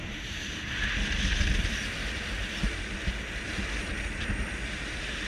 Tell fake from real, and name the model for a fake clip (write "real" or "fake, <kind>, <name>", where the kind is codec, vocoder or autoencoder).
real